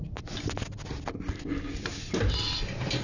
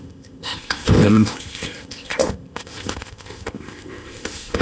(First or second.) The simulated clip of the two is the second